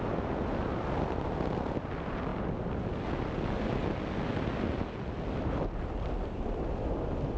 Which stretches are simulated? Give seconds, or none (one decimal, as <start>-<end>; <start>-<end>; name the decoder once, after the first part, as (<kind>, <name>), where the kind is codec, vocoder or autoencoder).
none